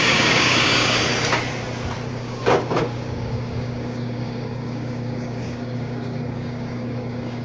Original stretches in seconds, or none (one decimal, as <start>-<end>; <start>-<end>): 1.0-2.1